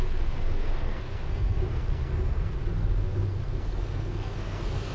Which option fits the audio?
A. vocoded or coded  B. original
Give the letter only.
A